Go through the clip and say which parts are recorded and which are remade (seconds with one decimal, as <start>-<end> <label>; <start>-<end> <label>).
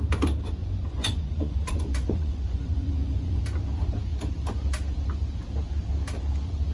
0.0-0.6 recorded; 0.6-3.4 remade; 3.4-6.7 recorded